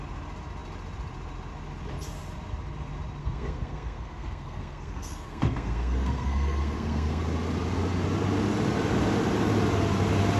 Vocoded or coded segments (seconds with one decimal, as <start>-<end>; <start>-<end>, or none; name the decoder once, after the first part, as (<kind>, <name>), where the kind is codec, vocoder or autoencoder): 3.2-7.2 (codec, SNAC)

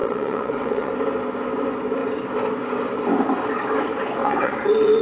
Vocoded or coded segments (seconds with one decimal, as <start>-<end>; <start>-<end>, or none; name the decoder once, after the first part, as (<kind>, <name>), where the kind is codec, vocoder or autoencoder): 0.0-0.9 (vocoder, WaveNeXt); 4.2-5.0

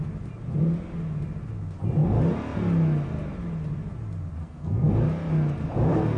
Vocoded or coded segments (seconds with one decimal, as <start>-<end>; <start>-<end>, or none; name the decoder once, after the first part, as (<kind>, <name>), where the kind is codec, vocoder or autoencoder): 4.4-4.9 (codec, SNAC)

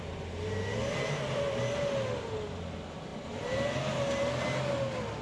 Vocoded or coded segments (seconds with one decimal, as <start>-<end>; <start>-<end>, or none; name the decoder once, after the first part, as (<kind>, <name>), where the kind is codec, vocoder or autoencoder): none

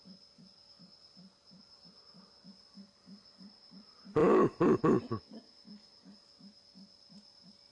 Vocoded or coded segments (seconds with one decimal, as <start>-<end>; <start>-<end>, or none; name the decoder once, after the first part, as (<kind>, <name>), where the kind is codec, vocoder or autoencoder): none

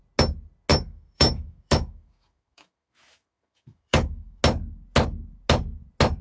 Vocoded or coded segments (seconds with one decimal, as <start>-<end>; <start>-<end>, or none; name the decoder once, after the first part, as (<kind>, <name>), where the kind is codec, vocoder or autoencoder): 0.7-4.4 (autoencoder, DAC-VAE)